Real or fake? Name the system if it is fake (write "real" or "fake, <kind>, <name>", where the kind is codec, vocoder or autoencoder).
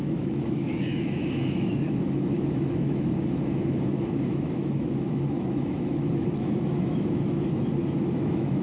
fake, autoencoder, DAC-VAE